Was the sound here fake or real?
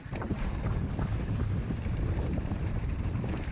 real